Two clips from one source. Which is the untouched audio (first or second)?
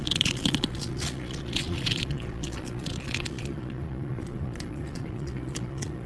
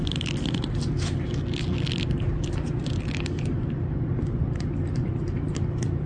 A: second